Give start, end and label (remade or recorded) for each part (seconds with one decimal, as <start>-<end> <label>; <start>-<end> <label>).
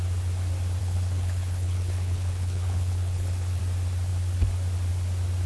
0.0-0.8 recorded; 0.8-3.6 remade; 3.6-5.5 recorded